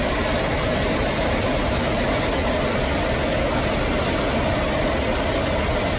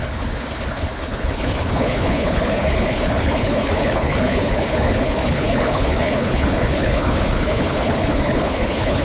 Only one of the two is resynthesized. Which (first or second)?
second